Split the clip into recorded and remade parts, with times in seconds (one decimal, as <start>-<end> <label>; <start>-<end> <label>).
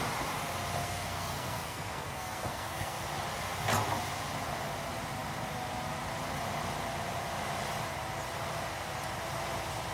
0.0-0.8 recorded; 0.8-3.0 remade; 3.0-9.9 recorded